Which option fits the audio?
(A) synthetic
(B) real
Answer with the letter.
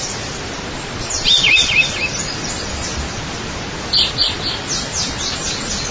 B